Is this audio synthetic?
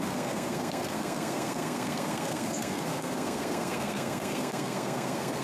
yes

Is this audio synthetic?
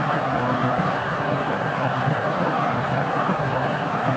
yes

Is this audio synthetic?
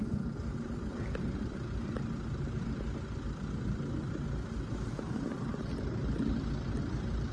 no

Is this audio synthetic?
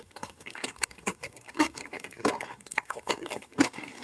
yes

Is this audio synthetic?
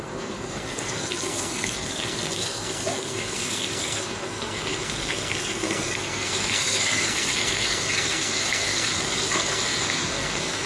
yes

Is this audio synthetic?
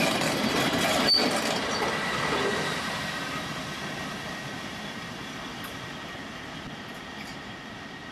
no